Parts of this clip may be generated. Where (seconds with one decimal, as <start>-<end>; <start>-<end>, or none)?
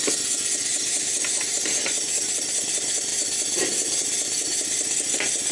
0.7-2.6; 3.1-5.1